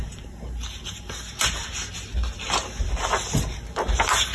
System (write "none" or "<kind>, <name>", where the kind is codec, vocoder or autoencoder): none